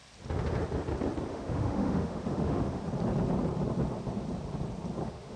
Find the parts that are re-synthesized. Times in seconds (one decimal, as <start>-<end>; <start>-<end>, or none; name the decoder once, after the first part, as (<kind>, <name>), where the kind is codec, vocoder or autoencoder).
1.3-2.8 (autoencoder, DAC-VAE); 5.0-5.4